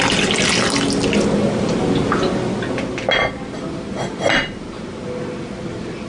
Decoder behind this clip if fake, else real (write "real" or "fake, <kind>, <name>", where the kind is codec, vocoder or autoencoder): real